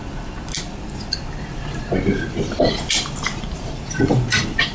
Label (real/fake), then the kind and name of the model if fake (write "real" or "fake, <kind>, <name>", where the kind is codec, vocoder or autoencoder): fake, vocoder, BigVGAN v2